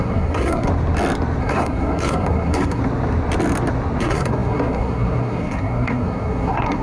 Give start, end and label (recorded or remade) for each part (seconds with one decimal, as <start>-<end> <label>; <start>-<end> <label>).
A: 0.0-0.7 remade; 0.7-1.4 recorded; 1.4-2.8 remade; 2.8-4.0 recorded; 4.0-6.8 remade